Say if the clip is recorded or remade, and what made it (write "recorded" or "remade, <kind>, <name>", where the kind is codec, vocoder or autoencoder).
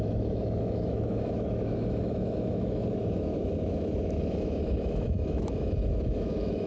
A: remade, autoencoder, DAC-VAE